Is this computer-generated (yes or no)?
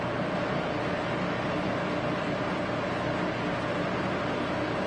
no